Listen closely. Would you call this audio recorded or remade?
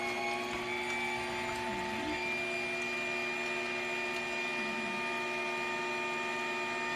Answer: recorded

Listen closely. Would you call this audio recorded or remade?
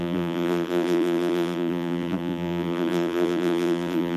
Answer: remade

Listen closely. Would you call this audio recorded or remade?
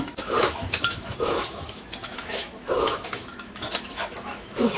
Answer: remade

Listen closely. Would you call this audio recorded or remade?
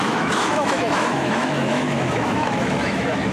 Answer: remade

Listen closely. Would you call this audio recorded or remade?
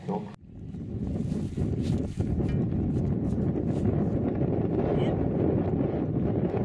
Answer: recorded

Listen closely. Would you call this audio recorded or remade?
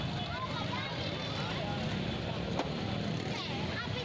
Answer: recorded